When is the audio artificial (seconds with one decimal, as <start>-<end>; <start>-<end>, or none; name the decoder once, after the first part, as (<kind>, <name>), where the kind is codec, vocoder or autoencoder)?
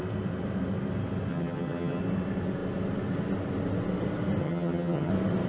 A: 1.3-2.0 (vocoder, HiFi-GAN); 4.4-5.1